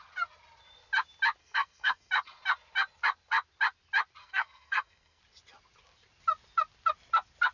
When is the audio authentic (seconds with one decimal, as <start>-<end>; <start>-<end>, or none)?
0.0-1.4; 2.1-4.2; 5.2-7.5